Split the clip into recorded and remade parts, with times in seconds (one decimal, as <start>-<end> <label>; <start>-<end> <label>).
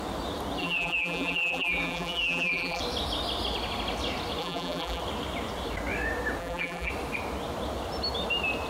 0.0-0.6 recorded; 0.6-2.8 remade; 2.8-4.4 recorded; 4.4-5.0 remade; 5.0-6.4 recorded; 6.4-6.9 remade; 6.9-8.7 recorded